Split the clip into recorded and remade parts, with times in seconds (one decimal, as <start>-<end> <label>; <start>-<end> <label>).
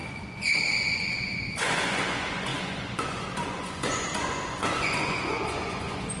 0.0-6.2 remade